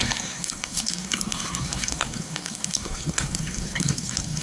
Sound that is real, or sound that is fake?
fake